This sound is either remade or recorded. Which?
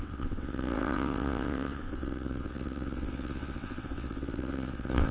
remade